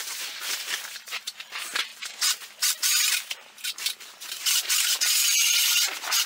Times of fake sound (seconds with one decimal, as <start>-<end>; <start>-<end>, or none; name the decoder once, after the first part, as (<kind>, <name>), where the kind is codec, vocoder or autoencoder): 0.0-6.3 (vocoder, BigVGAN v2)